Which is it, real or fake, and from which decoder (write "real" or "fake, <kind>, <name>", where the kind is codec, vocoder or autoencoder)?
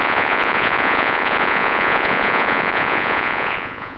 fake, vocoder, Vocos